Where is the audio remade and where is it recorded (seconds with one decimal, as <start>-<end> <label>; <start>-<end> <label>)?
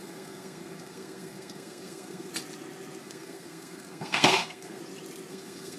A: 0.0-2.3 remade; 2.3-3.0 recorded; 3.0-4.8 remade; 4.8-5.3 recorded; 5.3-5.8 remade